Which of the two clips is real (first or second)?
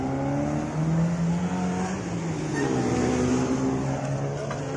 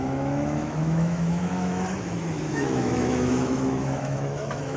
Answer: first